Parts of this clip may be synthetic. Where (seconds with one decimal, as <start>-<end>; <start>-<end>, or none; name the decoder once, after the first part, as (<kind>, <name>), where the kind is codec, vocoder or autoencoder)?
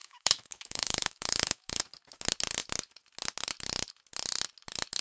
0.0-1.8 (autoencoder, DAC-VAE)